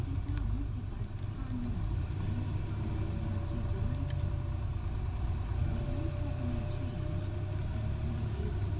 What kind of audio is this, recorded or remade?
recorded